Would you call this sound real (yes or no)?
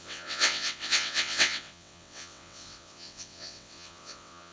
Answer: no